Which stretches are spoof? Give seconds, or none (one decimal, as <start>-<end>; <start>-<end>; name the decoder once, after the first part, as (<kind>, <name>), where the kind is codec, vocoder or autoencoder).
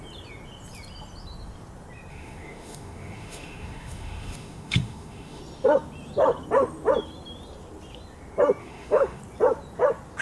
2.1-5.4 (autoencoder, DAC-VAE); 8.6-9.2